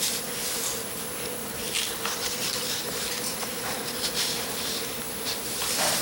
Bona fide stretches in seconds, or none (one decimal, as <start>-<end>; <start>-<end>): 0.0-1.4; 5.0-6.0